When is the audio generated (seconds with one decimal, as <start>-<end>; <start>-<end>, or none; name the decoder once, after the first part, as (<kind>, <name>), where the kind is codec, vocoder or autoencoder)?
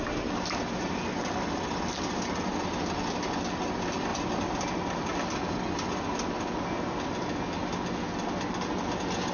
none